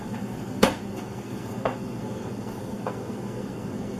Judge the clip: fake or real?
fake